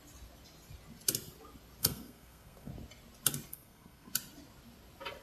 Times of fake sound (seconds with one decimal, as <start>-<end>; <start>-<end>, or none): 1.8-2.7; 3.5-4.1